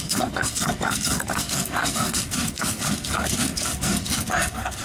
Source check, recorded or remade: remade